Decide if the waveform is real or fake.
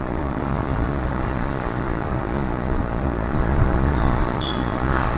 fake